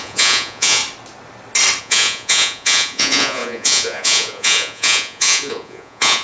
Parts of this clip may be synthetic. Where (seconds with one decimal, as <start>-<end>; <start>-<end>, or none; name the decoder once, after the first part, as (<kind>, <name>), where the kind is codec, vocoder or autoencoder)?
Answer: 0.0-0.8 (vocoder, Vocos); 1.8-6.2